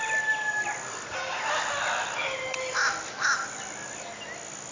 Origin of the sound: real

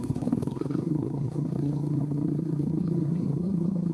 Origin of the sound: fake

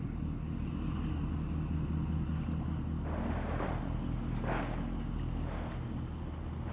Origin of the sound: real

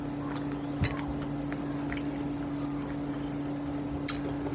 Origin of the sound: real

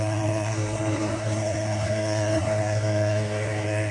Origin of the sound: fake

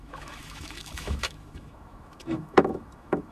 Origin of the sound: fake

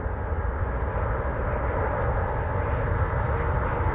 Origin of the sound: real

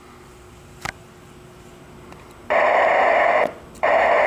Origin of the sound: real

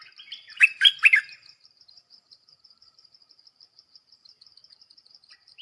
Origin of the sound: fake